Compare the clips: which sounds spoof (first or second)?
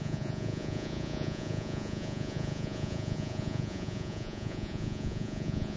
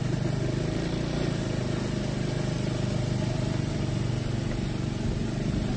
first